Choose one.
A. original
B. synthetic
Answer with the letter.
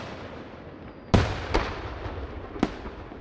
A